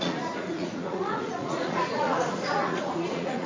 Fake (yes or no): yes